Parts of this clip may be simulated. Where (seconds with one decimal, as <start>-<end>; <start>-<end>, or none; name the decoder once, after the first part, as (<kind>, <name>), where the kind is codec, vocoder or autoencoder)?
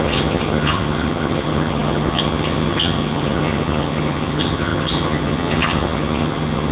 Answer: 0.0-6.7 (vocoder, HiFi-GAN)